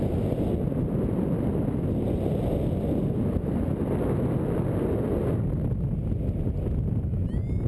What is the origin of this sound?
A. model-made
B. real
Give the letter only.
B